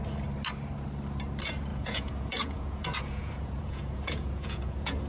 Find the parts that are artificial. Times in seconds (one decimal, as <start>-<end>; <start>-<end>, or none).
1.7-5.1